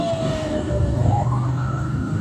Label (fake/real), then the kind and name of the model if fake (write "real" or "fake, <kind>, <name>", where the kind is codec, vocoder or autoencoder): fake, codec, DAC